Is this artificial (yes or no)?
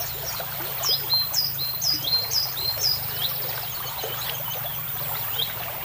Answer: no